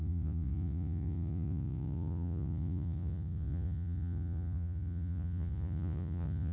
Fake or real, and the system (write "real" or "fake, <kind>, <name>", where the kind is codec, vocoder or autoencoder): fake, vocoder, Vocos